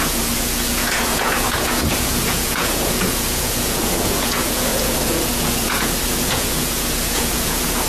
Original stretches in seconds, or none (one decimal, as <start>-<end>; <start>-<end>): none